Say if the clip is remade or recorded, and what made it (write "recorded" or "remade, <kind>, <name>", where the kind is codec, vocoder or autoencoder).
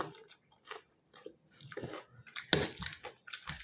recorded